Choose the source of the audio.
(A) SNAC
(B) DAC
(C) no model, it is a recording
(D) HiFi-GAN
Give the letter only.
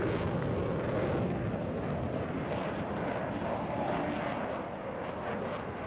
C